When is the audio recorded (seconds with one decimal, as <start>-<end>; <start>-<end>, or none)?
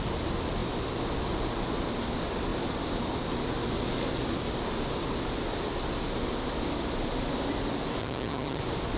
0.0-8.0; 8.6-9.0